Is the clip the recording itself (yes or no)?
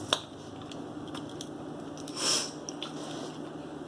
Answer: yes